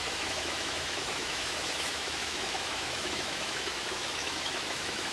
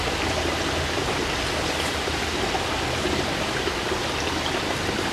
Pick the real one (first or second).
second